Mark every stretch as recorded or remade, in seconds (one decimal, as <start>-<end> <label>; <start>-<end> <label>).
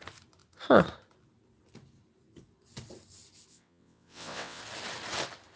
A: 0.0-3.5 recorded; 3.5-4.6 remade; 4.6-5.6 recorded